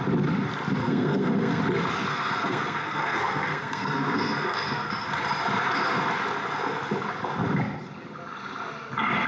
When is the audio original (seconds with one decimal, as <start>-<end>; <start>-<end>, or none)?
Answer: 0.0-0.8; 1.6-2.1; 4.9-9.3